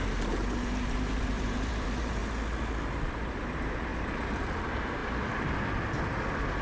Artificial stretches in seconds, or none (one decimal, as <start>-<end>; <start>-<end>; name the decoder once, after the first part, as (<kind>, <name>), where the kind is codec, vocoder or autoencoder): 0.0-2.2 (vocoder, BigVGAN v2); 3.1-3.9; 4.6-5.0

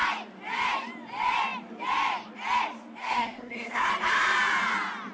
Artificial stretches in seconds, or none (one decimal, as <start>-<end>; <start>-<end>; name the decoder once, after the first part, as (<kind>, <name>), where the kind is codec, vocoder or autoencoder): 3.0-3.9 (codec, SNAC)

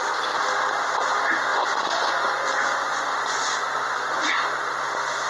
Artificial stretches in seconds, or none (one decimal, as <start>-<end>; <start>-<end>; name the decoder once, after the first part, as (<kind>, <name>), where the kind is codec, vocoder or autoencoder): 1.5-4.3 (vocoder, Vocos)

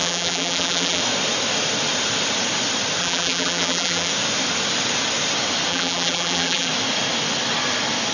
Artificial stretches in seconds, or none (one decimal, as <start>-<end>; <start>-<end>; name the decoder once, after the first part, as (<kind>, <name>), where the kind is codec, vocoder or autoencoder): 0.0-1.0 (vocoder, BigVGAN v2); 3.0-4.1; 5.7-6.7

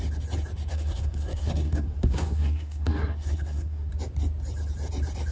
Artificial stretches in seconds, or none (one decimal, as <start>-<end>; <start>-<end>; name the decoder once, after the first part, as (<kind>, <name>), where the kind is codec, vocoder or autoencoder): 0.7-3.9 (codec, SNAC)

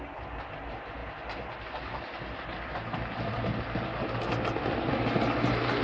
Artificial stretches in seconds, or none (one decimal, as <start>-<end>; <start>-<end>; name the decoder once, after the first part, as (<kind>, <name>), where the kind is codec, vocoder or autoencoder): none

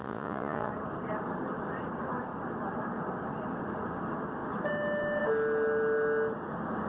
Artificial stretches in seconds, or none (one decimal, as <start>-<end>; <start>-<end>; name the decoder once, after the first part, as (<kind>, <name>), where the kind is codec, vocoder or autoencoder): 0.0-0.7 (vocoder, Vocos)

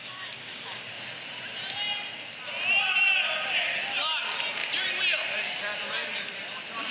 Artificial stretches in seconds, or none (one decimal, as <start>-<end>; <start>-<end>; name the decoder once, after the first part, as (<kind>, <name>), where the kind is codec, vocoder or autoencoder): 0.0-1.0 (codec, DAC)